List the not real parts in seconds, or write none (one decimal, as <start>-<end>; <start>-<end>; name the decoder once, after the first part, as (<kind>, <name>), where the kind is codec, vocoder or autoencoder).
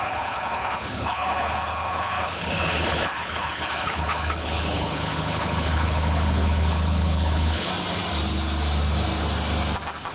0.0-7.7 (codec, HILCodec)